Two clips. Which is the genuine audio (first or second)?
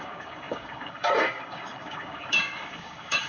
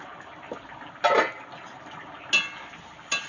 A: second